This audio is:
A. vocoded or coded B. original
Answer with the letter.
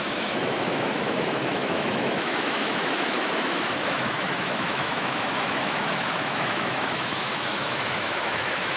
A